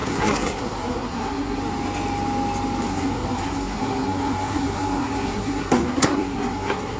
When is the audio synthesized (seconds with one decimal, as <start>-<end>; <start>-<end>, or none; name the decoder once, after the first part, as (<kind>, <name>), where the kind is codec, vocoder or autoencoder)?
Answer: 0.0-1.6 (codec, SNAC); 2.9-7.0

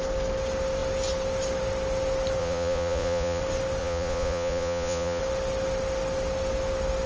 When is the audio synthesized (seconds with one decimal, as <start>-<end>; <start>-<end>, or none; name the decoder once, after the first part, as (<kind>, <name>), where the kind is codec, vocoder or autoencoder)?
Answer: 2.4-3.4 (vocoder, Vocos); 3.8-5.2

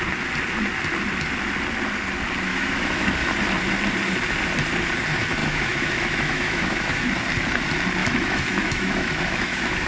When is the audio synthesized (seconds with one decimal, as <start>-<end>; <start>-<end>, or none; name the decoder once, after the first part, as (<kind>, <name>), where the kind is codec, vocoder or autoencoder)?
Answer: 2.5-3.1 (autoencoder, DAC-VAE); 5.4-7.1; 8.0-9.9

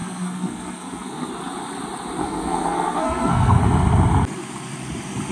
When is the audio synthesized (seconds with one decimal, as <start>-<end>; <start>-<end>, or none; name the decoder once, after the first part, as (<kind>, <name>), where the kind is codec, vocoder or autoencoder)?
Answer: 0.0-1.3 (codec, SNAC); 2.2-3.6

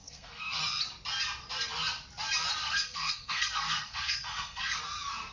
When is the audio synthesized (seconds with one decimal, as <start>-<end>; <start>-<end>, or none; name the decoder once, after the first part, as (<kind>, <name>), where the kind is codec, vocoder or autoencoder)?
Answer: 0.0-0.6 (codec, SNAC); 2.6-4.8